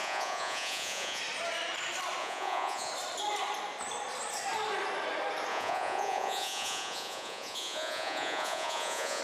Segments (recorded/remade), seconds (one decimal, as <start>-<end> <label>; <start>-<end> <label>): 0.0-1.2 remade; 1.2-2.2 recorded; 2.2-2.9 remade; 2.9-5.5 recorded; 5.5-9.2 remade